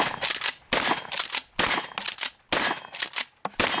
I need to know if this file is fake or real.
real